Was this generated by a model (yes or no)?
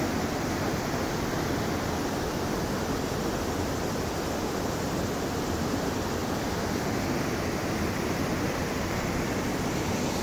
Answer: no